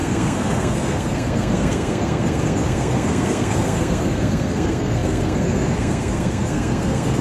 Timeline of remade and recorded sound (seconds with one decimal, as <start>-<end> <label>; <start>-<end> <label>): 0.0-7.2 remade